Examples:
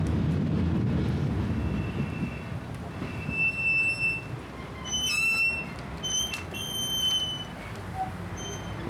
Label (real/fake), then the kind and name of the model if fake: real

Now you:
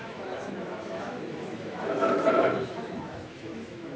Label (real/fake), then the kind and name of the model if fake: fake, autoencoder, DAC-VAE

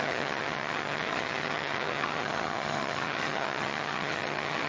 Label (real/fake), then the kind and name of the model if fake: fake, vocoder, HiFi-GAN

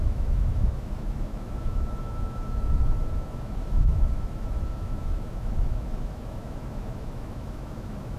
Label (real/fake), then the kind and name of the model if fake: fake, autoencoder, DAC-VAE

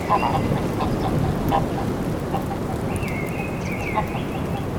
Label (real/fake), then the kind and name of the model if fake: real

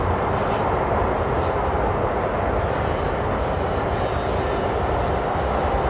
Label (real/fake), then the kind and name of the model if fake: real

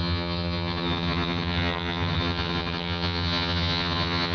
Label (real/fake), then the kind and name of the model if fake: fake, vocoder, HiFi-GAN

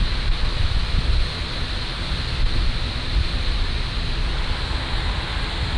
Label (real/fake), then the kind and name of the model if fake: real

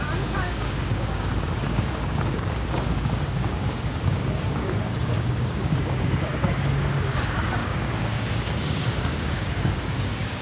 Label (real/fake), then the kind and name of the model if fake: fake, codec, DAC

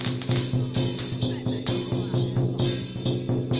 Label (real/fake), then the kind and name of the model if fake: real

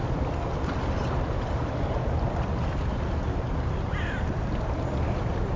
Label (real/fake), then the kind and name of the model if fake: real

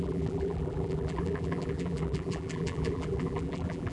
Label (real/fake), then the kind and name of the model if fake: fake, vocoder, BigVGAN v2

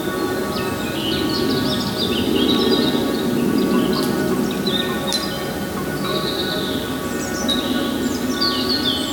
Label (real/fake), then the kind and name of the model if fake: real